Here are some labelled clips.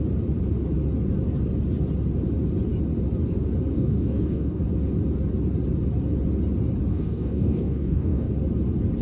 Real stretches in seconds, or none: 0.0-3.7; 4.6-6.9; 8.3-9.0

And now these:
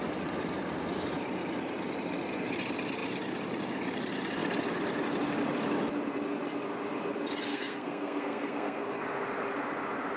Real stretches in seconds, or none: 0.0-7.5; 8.8-10.2